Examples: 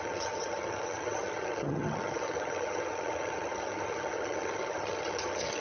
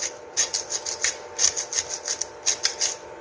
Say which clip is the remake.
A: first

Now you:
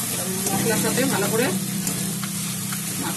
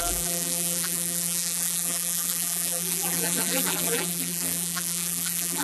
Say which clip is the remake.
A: second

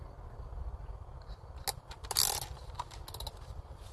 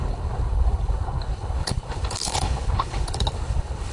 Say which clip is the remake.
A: second